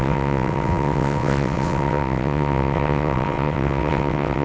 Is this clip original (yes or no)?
no